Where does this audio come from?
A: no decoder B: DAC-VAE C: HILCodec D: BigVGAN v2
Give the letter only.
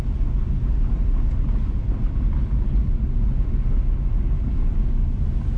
A